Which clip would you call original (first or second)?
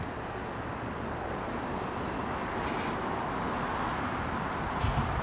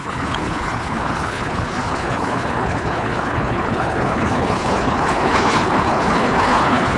first